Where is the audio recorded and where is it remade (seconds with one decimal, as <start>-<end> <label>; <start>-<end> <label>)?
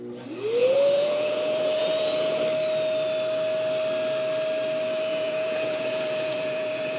0.0-0.6 recorded; 0.6-2.4 remade; 2.4-5.1 recorded; 5.1-7.0 remade